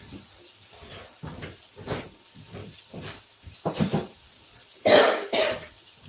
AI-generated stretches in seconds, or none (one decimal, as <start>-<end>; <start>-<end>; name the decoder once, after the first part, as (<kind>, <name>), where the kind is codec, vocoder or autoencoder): 2.6-3.7 (vocoder, BigVGAN v2); 4.7-6.1